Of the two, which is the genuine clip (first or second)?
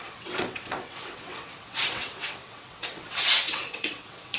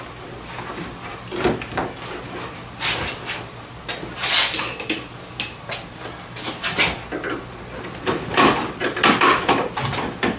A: second